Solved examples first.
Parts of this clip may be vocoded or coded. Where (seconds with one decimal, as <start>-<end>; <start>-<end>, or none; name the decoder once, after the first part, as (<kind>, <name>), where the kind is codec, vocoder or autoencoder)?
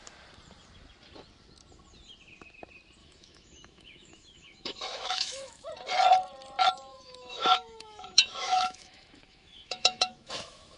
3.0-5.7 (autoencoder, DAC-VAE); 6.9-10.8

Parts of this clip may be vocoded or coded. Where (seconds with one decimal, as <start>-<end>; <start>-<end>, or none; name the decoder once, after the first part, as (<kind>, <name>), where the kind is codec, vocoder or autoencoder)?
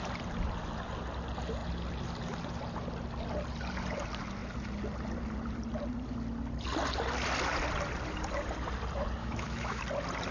9.2-9.8 (autoencoder, DAC-VAE)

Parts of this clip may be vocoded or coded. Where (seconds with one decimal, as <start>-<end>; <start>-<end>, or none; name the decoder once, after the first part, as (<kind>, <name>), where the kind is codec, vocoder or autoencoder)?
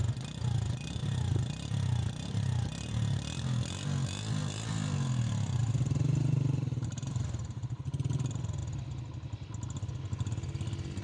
1.0-1.5 (vocoder, BigVGAN v2); 5.6-7.8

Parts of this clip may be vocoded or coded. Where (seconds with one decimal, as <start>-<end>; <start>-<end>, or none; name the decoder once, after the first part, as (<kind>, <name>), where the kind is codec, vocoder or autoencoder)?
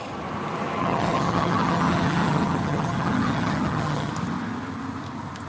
0.8-4.1 (vocoder, HiFi-GAN)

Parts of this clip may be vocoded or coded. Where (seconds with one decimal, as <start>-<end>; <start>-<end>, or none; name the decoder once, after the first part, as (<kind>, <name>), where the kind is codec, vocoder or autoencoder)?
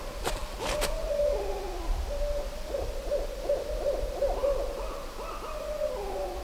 none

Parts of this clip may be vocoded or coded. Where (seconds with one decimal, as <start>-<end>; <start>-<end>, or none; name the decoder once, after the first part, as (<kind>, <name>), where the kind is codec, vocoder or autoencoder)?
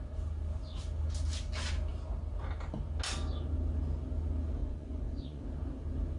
4.6-5.4 (vocoder, Vocos)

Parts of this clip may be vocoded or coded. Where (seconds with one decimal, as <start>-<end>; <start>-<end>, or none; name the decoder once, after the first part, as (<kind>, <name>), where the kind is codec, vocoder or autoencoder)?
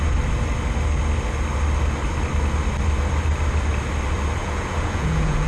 4.4-5.5 (vocoder, Vocos)